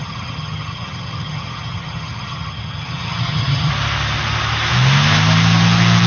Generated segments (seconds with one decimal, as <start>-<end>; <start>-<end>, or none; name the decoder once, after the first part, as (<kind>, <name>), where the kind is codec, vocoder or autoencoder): 0.0-3.7 (vocoder, HiFi-GAN)